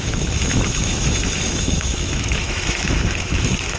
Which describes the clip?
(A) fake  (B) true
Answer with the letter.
A